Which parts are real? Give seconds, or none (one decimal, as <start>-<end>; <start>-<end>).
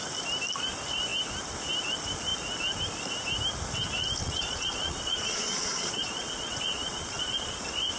0.0-4.2; 7.6-8.0